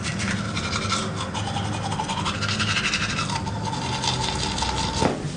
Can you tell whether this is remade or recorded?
recorded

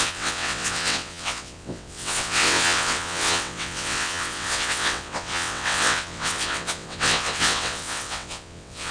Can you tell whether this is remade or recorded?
remade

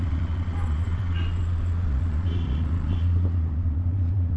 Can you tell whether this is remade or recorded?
remade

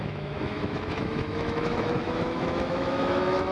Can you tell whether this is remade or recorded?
remade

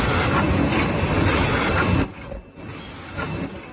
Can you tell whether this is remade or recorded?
recorded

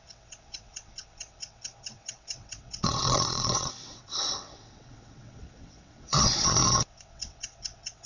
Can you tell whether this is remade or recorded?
remade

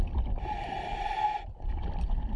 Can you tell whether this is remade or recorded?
recorded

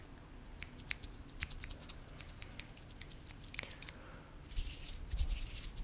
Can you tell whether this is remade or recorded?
recorded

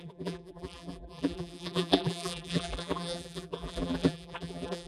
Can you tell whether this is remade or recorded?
remade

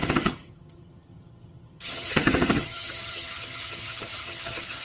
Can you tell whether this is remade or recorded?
remade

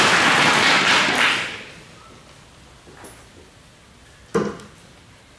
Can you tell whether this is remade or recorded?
recorded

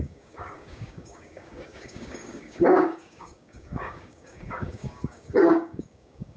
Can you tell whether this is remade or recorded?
remade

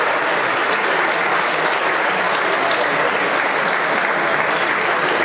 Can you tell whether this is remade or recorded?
recorded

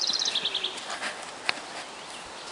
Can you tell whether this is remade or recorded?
recorded